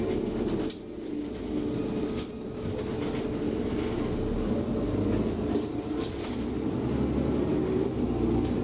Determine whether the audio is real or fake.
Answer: real